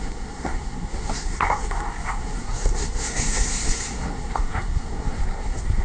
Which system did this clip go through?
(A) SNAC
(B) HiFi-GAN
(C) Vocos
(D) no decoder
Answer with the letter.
A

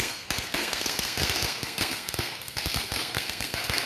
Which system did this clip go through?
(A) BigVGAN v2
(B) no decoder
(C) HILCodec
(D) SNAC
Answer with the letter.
D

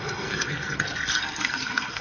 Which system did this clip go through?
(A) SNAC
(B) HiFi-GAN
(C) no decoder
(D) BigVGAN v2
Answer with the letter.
A